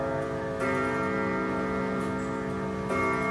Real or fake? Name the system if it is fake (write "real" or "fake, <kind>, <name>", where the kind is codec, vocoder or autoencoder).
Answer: real